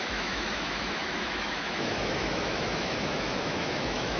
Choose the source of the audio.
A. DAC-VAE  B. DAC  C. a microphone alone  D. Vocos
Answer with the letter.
A